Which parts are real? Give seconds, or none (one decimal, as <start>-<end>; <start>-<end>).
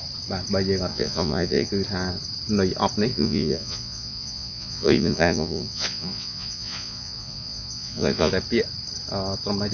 0.0-0.9; 1.7-3.1; 8.3-9.7